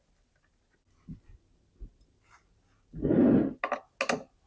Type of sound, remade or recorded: recorded